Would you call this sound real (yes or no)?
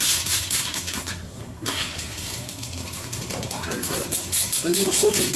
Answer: no